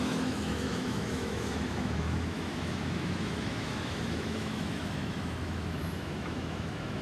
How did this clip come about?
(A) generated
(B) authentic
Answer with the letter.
A